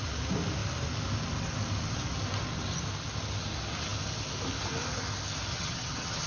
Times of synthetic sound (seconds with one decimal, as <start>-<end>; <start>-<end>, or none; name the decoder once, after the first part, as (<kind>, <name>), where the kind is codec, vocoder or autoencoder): 5.5-6.3 (vocoder, HiFi-GAN)

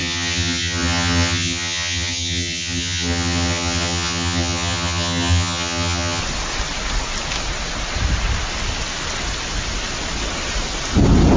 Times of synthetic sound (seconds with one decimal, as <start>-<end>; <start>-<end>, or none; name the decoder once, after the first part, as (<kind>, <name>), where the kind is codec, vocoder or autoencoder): 0.0-6.2 (vocoder, HiFi-GAN)

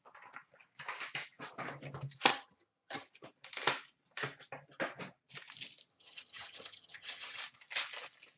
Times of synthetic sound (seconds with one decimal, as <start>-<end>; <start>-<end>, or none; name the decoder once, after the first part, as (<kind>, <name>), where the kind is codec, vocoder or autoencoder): 2.3-3.1 (vocoder, HiFi-GAN); 5.9-7.4